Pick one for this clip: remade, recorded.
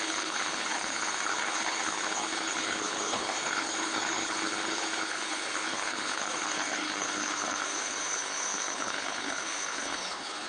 remade